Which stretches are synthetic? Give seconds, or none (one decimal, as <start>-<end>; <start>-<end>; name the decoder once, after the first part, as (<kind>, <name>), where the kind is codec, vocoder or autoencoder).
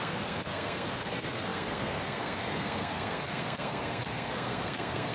0.0-5.1 (codec, SNAC)